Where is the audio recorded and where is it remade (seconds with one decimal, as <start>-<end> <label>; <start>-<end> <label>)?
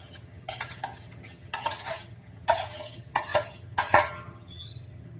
0.0-5.2 remade